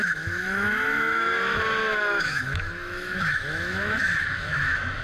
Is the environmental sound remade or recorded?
remade